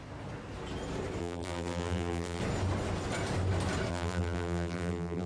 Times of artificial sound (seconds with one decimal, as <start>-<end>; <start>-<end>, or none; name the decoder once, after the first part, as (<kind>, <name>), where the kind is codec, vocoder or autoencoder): 1.2-2.4 (vocoder, BigVGAN v2); 3.9-5.3